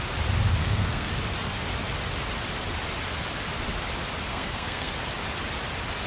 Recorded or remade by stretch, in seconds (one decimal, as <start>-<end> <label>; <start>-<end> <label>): 0.0-0.6 recorded; 0.6-1.1 remade; 1.1-4.3 recorded; 4.3-4.9 remade; 4.9-6.1 recorded